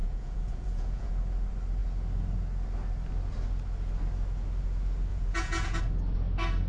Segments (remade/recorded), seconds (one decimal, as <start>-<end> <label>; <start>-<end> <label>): 0.0-1.1 remade; 1.1-5.1 recorded; 5.1-5.8 remade; 5.8-6.7 recorded